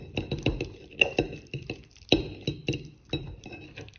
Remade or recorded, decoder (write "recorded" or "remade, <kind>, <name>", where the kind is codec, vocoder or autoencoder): recorded